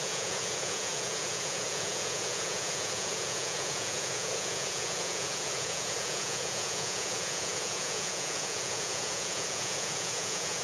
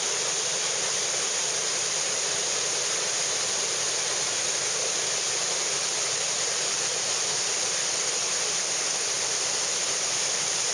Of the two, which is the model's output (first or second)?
first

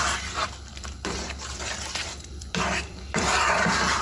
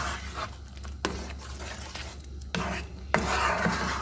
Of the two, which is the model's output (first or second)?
first